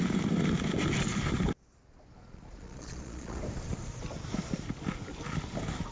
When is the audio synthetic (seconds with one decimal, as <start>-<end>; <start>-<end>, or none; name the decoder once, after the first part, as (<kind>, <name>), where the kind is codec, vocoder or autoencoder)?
2.2-3.4 (vocoder, Vocos)